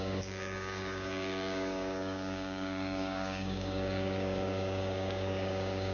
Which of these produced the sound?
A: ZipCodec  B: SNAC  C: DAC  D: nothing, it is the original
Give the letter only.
C